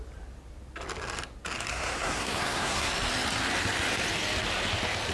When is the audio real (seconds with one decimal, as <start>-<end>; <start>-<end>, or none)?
0.0-1.7; 2.9-5.1